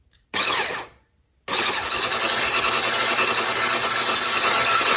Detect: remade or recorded recorded